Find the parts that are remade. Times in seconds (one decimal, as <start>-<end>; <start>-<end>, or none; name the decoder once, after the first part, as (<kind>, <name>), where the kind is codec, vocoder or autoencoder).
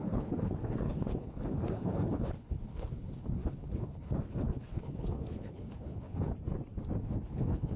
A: 0.0-6.3 (codec, HILCodec); 7.0-7.8